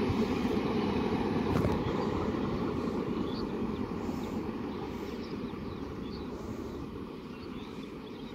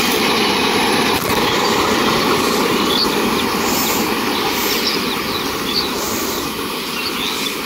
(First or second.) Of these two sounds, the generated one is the first